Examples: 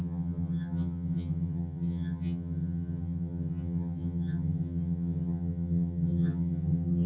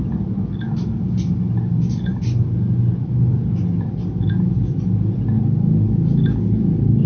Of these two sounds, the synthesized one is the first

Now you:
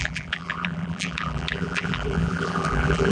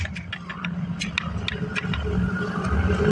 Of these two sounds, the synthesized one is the first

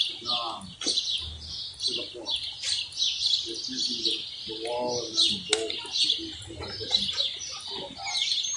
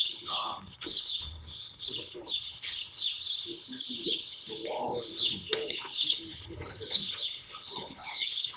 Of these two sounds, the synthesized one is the second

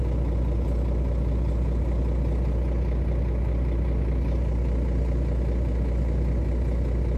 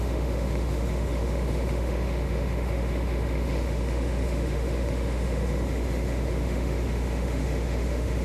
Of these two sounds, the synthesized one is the second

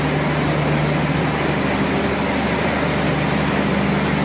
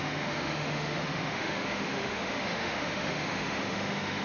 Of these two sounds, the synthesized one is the second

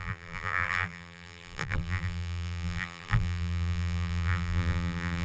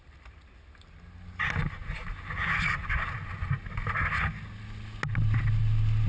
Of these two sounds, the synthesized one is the first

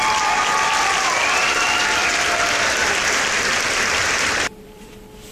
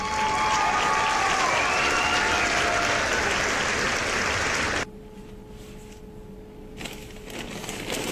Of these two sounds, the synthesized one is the first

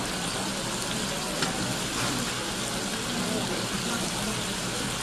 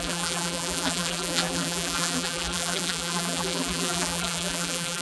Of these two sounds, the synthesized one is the second